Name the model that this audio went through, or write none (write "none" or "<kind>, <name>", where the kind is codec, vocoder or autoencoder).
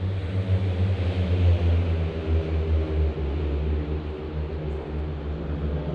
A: none